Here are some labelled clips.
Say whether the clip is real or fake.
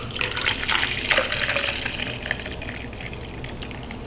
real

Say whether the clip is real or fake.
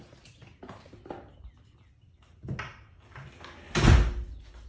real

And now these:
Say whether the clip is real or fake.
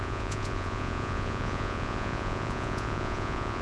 fake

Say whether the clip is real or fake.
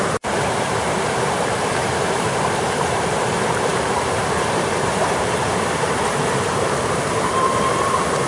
fake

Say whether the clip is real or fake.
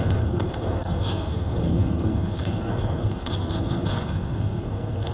fake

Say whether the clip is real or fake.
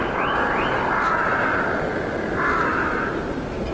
real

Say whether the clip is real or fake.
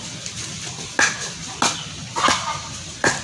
real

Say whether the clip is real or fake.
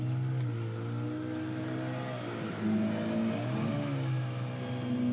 real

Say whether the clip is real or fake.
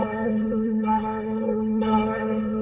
fake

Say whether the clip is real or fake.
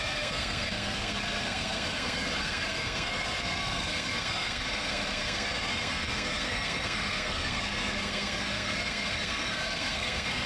fake